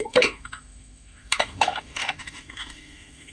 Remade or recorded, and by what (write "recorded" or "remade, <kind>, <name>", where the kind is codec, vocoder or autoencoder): remade, autoencoder, DAC-VAE